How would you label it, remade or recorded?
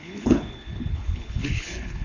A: remade